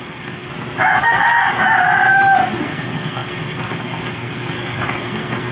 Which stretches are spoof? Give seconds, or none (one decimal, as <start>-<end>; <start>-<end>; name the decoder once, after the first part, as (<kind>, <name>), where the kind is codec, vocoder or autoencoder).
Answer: 0.0-0.5 (codec, SNAC); 1.0-1.5; 2.6-5.5